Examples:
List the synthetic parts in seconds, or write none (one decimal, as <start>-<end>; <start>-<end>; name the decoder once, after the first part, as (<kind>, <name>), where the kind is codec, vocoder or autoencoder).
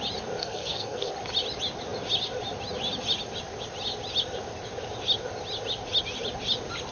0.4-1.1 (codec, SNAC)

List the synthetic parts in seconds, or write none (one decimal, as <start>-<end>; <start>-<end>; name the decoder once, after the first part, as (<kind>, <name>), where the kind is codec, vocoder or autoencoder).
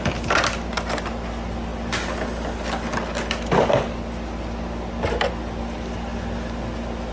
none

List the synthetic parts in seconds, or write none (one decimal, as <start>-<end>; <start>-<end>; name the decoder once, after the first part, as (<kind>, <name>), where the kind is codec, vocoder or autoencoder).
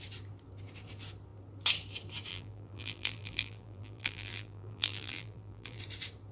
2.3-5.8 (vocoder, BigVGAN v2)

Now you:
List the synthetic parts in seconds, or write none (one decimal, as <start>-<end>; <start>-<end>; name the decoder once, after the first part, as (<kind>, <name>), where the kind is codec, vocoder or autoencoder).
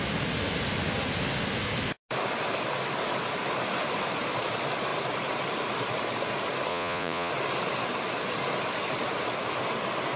6.7-7.3 (vocoder, Vocos)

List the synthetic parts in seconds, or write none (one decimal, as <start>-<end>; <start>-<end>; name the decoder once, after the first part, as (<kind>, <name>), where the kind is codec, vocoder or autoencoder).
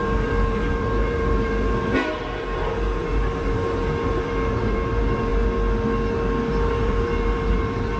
0.0-5.3 (vocoder, BigVGAN v2); 6.5-8.0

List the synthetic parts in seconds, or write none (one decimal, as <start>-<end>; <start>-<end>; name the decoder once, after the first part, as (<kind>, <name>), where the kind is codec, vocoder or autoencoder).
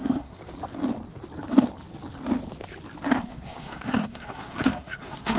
0.0-0.4 (codec, SNAC); 3.2-5.4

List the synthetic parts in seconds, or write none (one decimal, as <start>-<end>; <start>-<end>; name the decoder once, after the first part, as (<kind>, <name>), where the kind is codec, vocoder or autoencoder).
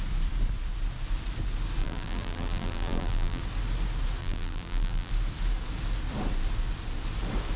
1.8-3.4 (vocoder, BigVGAN v2); 4.2-5.1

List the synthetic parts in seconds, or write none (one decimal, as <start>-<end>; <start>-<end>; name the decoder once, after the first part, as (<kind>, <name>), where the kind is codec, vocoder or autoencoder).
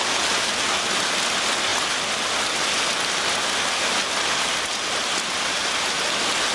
none